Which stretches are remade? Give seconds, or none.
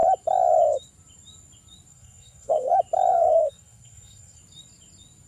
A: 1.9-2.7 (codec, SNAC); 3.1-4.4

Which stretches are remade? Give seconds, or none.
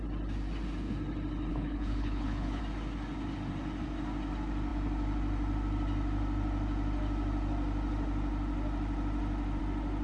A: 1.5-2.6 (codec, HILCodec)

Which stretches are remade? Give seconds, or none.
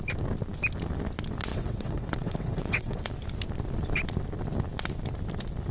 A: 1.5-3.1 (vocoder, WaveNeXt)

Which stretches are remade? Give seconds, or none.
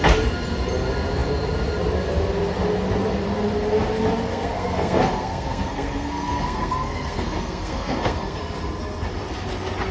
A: 4.3-8.4 (codec, SNAC)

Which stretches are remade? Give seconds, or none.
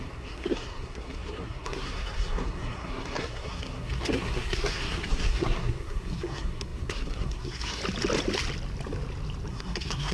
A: 0.0-7.8 (codec, SNAC); 9.5-10.1